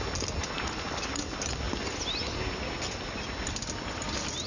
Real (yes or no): yes